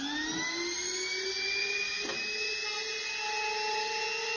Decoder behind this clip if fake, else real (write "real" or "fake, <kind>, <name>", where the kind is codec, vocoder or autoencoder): real